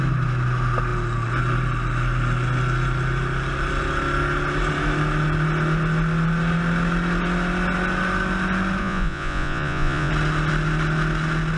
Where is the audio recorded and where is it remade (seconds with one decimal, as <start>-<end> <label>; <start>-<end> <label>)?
0.0-8.8 recorded; 8.8-10.1 remade; 10.1-11.6 recorded